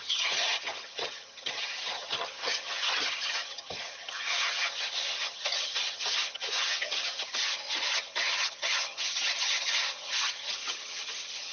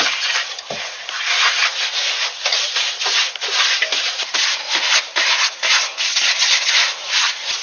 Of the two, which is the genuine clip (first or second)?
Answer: second